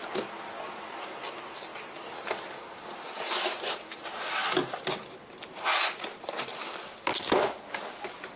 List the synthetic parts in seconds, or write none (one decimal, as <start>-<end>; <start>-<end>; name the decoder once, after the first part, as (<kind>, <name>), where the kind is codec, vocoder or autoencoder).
none